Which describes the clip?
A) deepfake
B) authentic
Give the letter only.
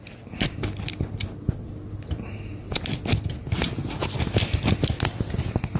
B